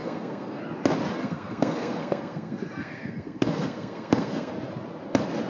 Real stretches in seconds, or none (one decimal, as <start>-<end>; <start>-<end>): 0.6-1.2; 4.5-5.5